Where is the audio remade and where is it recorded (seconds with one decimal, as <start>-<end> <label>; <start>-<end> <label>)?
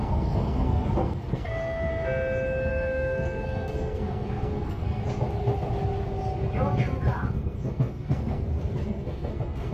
0.0-1.9 remade; 1.9-2.7 recorded; 2.7-5.0 remade; 5.0-7.3 recorded; 7.3-9.7 remade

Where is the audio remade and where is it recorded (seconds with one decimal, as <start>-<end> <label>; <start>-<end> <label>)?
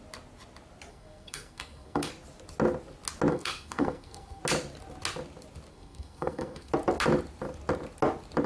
0.0-0.9 recorded; 0.9-2.1 remade; 2.1-3.3 recorded; 3.3-4.4 remade; 4.4-5.7 recorded; 5.7-6.7 remade; 6.7-8.5 recorded